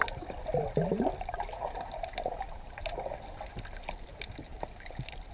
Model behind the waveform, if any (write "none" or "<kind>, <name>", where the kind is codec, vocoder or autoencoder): none